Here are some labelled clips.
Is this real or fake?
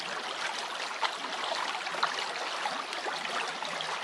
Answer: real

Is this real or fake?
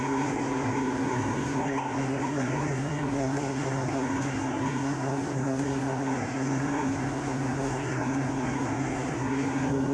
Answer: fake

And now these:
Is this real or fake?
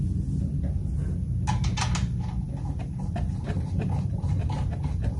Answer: real